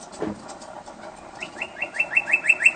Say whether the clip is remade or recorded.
recorded